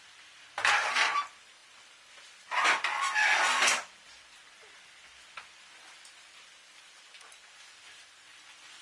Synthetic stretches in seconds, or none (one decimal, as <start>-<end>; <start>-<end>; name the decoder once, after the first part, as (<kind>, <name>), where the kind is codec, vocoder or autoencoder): 0.0-8.8 (vocoder, BigVGAN v2)